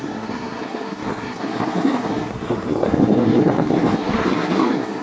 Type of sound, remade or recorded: remade